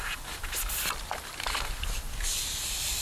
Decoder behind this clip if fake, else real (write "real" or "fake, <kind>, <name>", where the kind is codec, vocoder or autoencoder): real